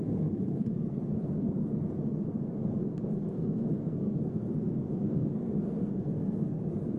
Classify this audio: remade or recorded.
remade